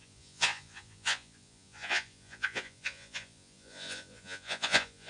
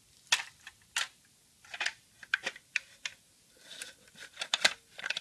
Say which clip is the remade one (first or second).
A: first